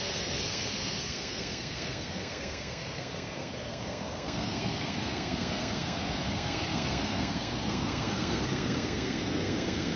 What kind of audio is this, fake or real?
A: fake